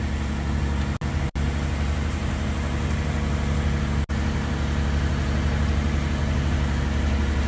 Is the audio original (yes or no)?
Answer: yes